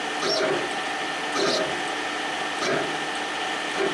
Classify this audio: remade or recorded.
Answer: recorded